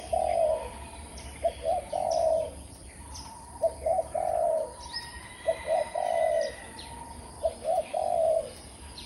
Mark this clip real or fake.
fake